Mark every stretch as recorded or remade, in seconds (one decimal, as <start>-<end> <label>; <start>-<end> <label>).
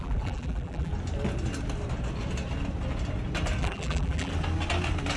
0.0-0.9 remade; 0.9-3.6 recorded; 3.6-4.3 remade; 4.3-5.2 recorded